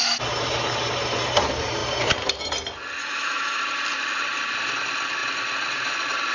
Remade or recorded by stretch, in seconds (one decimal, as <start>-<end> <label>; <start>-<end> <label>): 0.0-3.0 recorded; 3.0-3.6 remade; 3.6-6.3 recorded